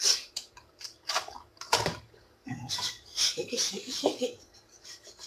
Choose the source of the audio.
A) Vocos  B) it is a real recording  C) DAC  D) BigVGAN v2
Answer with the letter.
C